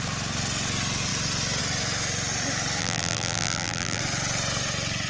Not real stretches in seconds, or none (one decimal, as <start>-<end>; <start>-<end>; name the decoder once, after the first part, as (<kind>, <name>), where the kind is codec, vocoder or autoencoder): 2.8-4.0 (vocoder, BigVGAN v2)